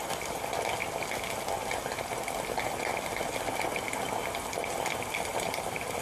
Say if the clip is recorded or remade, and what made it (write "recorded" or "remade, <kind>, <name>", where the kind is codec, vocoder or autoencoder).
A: recorded